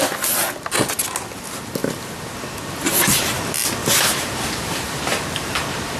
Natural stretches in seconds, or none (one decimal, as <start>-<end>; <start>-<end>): 0.0-3.8; 5.5-6.0